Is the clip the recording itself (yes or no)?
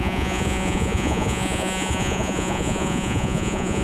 no